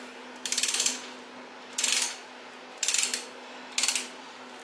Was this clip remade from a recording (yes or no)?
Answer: no